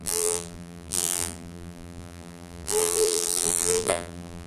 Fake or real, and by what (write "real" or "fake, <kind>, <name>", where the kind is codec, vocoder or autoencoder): fake, vocoder, BigVGAN v2